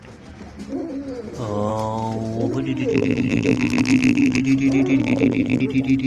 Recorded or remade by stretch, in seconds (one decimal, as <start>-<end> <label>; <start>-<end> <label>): 0.0-2.9 recorded; 2.9-4.4 remade; 4.4-5.0 recorded; 5.0-5.6 remade; 5.6-6.1 recorded